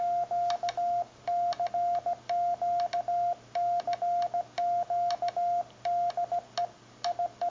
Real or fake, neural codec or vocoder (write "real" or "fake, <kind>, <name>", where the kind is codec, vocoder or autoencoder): real